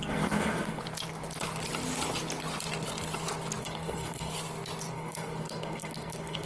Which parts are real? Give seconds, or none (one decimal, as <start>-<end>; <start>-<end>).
0.8-3.6; 4.3-4.9